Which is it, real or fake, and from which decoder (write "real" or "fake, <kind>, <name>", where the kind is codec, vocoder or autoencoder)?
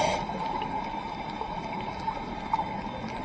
real